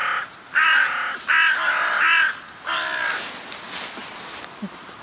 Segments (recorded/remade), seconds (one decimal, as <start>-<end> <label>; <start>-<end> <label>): 0.0-5.0 recorded